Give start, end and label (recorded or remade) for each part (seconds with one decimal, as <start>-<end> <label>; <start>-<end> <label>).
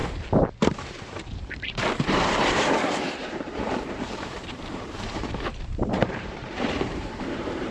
0.0-0.8 recorded; 0.8-7.7 remade